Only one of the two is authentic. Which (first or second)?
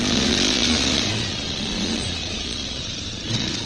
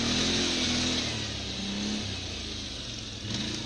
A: second